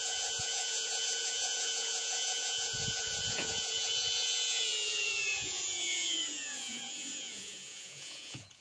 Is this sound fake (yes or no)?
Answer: yes